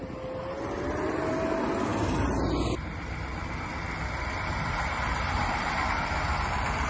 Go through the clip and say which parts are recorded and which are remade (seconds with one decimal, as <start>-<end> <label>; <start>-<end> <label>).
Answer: 0.0-6.9 recorded